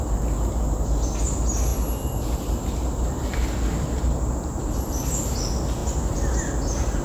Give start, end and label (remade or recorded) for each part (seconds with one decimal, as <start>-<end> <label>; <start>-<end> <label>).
0.0-7.0 recorded